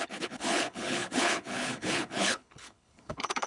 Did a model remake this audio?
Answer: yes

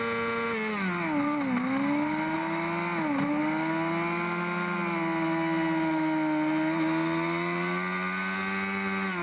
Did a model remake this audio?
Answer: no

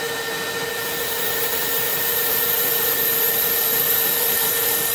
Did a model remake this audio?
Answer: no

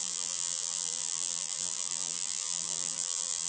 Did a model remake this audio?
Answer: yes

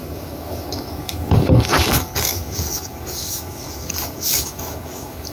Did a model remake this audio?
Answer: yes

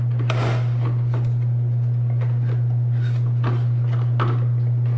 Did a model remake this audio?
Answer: no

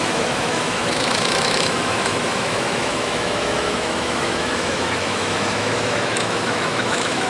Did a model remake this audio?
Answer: yes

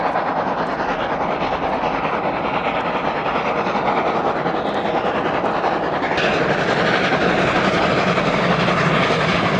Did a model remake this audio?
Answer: no